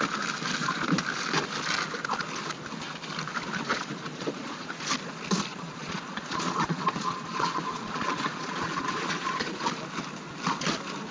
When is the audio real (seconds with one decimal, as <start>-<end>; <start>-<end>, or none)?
0.0-3.7; 4.8-5.5; 9.7-11.1